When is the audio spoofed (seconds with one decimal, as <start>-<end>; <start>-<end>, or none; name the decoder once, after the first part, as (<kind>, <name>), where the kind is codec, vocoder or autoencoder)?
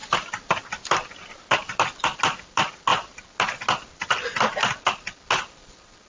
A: none